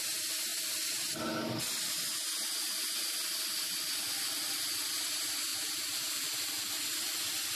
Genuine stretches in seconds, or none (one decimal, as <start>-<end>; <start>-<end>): 0.0-5.5; 6.8-7.6